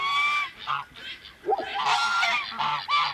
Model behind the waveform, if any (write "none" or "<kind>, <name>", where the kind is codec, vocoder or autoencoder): none